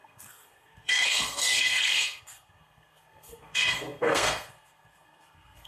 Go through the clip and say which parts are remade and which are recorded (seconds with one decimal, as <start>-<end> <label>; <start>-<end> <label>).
0.0-5.7 remade